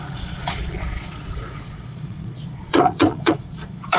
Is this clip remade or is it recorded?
remade